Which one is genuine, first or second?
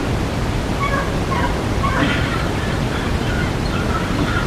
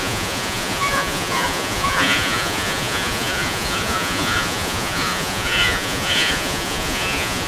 first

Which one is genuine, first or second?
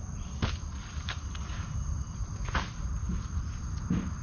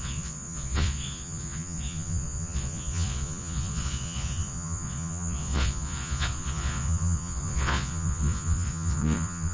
first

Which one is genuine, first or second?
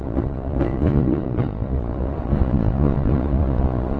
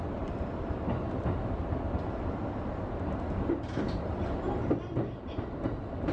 second